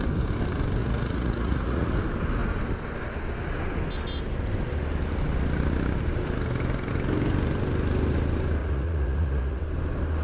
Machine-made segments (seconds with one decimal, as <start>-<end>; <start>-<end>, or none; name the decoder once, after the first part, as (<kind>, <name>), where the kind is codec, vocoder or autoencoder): 0.8-1.9 (vocoder, Vocos); 8.6-9.6